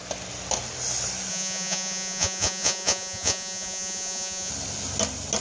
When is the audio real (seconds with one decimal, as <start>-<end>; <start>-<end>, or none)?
0.0-1.3; 4.5-5.4